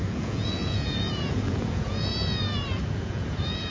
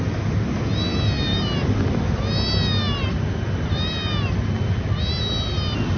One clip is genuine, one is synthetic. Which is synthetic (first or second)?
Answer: first